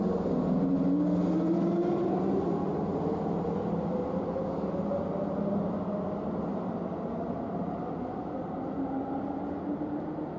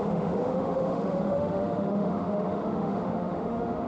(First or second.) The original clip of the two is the first